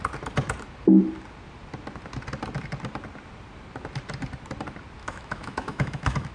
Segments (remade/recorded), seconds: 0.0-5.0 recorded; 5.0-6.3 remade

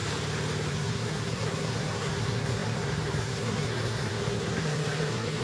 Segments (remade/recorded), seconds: 0.0-0.7 recorded; 0.7-5.4 remade

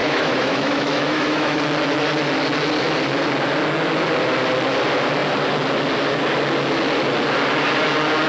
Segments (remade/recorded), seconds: 0.0-1.6 remade; 1.6-8.3 recorded

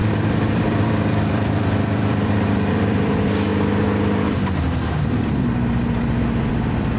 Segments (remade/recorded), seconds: 0.0-3.5 remade; 3.5-6.2 recorded; 6.2-7.0 remade

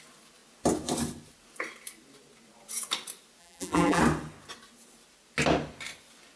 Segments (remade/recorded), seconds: 0.0-3.4 recorded; 3.4-4.0 remade; 4.0-6.4 recorded